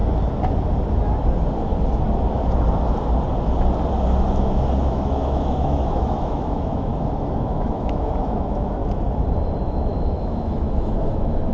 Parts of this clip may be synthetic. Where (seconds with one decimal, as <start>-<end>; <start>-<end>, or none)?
4.9-6.9; 7.4-8.8; 9.6-11.5